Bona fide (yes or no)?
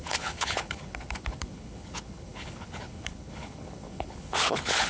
no